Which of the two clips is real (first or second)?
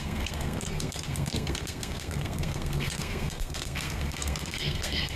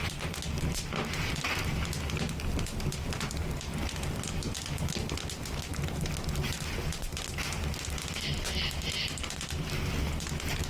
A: second